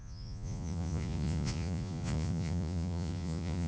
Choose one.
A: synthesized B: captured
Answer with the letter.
A